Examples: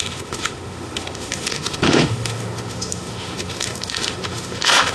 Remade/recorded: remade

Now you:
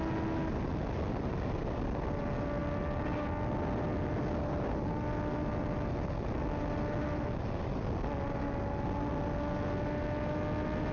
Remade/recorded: recorded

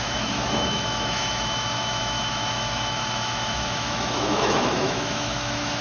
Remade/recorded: remade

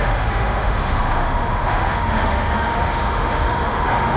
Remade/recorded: remade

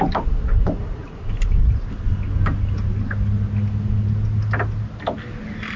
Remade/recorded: recorded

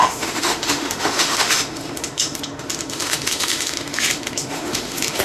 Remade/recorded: remade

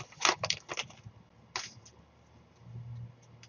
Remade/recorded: recorded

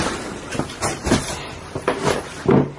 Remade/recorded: recorded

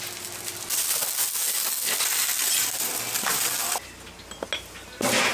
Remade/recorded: recorded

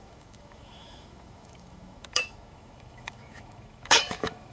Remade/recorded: remade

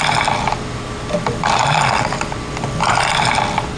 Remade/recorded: recorded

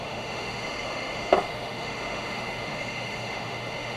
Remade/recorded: remade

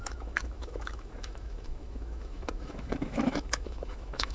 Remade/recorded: remade